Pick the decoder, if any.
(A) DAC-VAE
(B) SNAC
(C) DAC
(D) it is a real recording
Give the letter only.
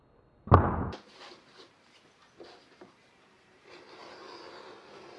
D